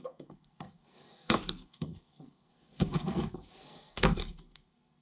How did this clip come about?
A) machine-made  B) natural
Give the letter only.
A